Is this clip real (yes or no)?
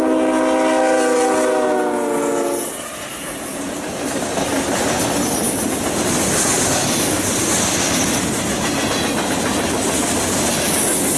yes